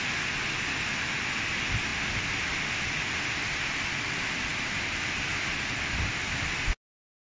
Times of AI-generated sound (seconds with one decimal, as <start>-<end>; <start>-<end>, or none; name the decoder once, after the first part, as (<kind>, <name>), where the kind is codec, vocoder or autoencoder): none